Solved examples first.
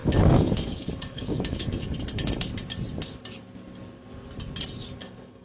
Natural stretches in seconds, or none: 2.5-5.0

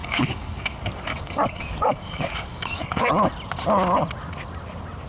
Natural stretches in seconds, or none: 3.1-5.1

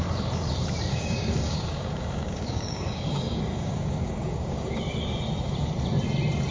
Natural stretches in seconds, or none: 0.0-0.9; 4.8-6.5

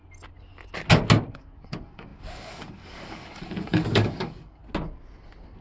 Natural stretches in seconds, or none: 0.0-1.3; 4.6-5.6